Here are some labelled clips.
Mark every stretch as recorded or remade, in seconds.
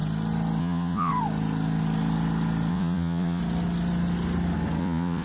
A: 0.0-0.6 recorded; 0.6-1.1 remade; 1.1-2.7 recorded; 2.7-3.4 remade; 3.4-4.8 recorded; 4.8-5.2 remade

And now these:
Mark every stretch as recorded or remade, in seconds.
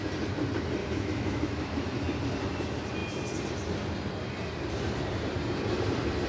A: 0.0-0.8 recorded; 0.8-2.0 remade; 2.0-6.3 recorded